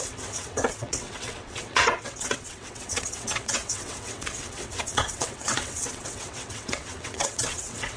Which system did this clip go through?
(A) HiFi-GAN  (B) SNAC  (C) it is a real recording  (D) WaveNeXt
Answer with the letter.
D